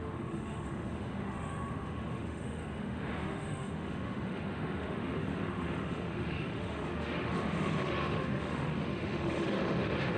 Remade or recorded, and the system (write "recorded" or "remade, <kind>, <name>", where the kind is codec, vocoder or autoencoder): remade, autoencoder, DAC-VAE